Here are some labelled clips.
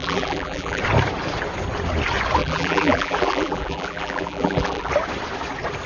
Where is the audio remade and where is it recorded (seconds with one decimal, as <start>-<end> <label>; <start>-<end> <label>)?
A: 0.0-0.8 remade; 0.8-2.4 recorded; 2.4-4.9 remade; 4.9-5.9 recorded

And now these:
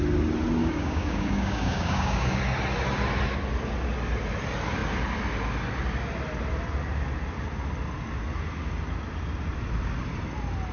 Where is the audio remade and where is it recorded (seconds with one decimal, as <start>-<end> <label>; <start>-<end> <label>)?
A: 0.0-0.6 recorded; 0.6-2.4 remade; 2.4-10.7 recorded

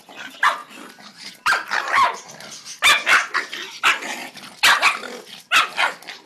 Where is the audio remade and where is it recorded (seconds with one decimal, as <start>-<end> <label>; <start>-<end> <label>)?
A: 0.0-0.6 recorded; 0.6-2.3 remade; 2.3-6.3 recorded

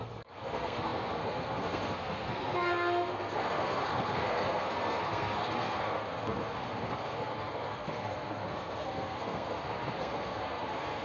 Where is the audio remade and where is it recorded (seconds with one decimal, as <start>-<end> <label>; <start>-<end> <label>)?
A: 0.0-11.0 remade

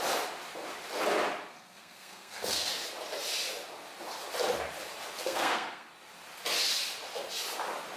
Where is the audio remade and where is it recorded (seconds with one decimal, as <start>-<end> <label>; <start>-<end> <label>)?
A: 0.0-1.5 recorded; 1.5-2.7 remade; 2.7-5.2 recorded; 5.2-5.9 remade; 5.9-8.0 recorded

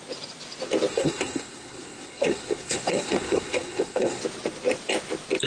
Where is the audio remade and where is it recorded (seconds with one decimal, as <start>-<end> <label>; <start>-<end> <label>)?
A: 0.0-0.9 recorded; 0.9-4.2 remade; 4.2-5.5 recorded